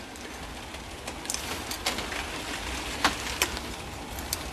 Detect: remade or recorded recorded